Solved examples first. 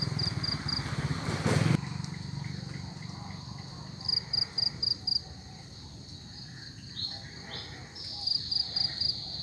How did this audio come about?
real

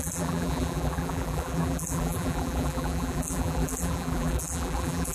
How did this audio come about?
fake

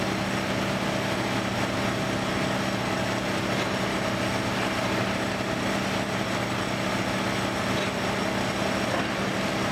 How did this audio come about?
real